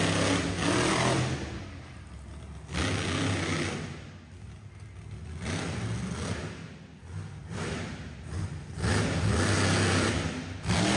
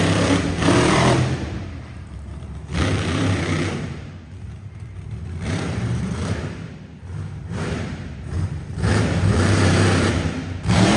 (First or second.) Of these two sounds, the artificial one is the second